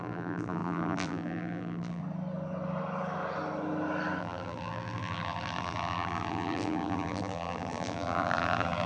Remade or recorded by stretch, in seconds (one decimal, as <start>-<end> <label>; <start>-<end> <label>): 0.0-2.0 remade; 2.0-4.2 recorded; 4.2-8.9 remade